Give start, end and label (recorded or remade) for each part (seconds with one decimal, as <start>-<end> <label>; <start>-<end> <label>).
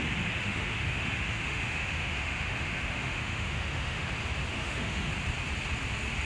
0.0-0.4 recorded; 0.4-4.1 remade; 4.1-4.5 recorded; 4.5-5.1 remade; 5.1-6.2 recorded